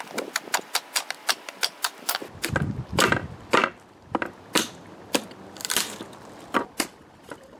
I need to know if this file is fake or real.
real